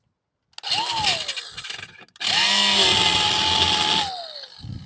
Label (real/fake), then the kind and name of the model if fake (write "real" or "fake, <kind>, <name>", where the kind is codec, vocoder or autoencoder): real